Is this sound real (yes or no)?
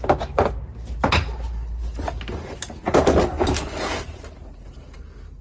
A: yes